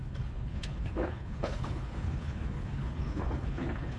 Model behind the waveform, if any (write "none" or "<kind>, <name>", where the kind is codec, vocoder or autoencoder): codec, HILCodec